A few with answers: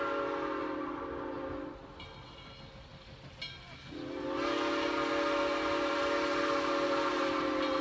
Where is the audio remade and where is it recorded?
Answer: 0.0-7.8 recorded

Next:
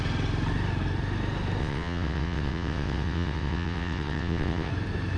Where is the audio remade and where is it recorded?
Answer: 0.0-1.6 recorded; 1.6-4.7 remade; 4.7-5.2 recorded

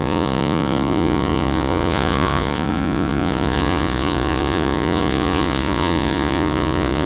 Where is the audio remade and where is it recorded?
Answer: 0.0-7.1 remade

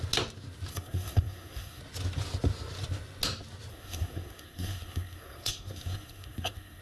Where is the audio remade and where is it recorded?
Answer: 0.0-0.7 recorded; 0.7-1.8 remade; 1.8-3.7 recorded; 3.7-6.8 remade

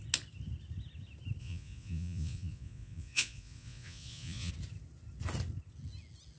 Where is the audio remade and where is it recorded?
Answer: 0.0-1.4 recorded; 1.4-4.5 remade; 4.5-6.4 recorded

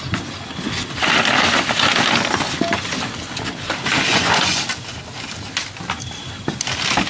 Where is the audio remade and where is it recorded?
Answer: 0.0-4.1 recorded; 4.1-4.6 remade; 4.6-7.1 recorded